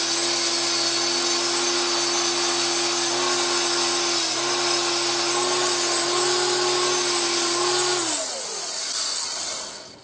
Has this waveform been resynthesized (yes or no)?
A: no